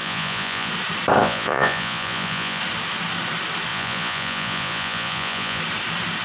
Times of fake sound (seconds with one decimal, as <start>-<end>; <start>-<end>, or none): 0.0-0.7; 1.2-2.6; 3.7-5.6